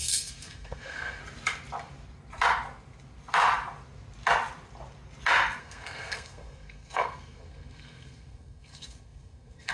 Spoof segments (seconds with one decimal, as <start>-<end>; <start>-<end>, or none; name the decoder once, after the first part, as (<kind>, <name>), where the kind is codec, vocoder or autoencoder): 0.0-1.2 (codec, SNAC); 5.6-9.7